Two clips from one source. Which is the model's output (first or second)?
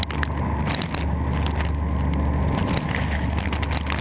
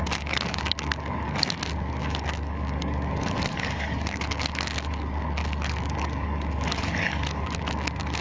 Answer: second